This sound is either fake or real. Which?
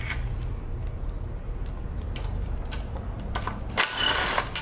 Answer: real